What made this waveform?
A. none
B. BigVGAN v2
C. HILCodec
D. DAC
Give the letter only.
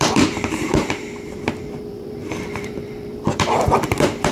B